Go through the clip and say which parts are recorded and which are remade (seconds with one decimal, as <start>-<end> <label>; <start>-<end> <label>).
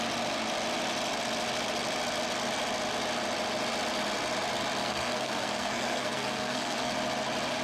0.0-4.8 recorded; 4.8-6.9 remade; 6.9-7.6 recorded